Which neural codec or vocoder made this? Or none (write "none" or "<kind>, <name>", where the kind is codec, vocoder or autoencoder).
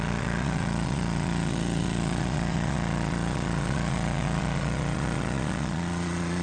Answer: vocoder, Vocos